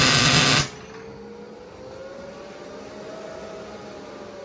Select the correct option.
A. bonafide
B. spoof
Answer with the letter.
A